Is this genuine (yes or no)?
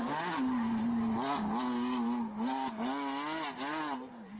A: yes